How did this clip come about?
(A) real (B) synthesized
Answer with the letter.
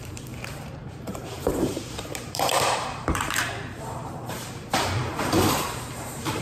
B